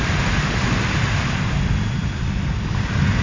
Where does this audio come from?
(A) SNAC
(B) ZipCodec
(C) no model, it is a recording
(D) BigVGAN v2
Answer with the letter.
C